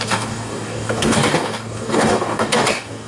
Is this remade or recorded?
remade